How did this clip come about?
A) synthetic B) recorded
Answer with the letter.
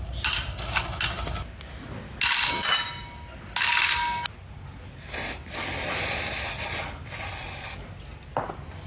B